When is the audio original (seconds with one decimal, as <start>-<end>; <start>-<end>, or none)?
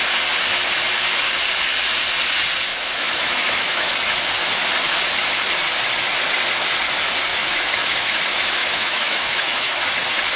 0.0-2.7; 3.9-7.3; 8.2-8.6; 9.8-10.4